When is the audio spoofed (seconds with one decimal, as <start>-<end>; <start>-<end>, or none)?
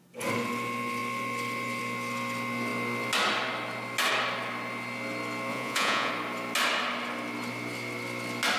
5.5-6.1